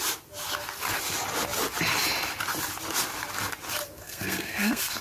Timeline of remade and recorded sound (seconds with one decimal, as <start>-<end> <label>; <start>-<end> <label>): 0.0-3.9 recorded; 3.9-5.0 remade